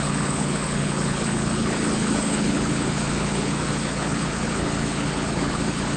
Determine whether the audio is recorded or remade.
remade